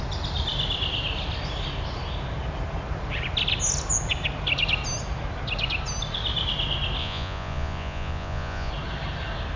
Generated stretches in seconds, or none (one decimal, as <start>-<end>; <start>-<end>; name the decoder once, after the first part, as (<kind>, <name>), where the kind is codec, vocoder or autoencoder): 7.0-8.7 (vocoder, Vocos)